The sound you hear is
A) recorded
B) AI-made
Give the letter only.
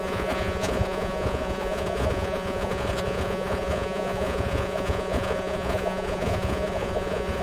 B